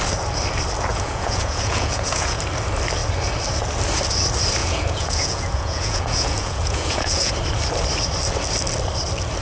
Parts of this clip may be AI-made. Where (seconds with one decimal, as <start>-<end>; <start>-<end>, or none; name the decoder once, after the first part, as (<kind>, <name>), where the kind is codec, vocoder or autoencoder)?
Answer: 0.9-2.4 (vocoder, Vocos); 4.6-7.3